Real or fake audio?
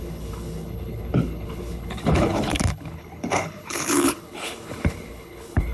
fake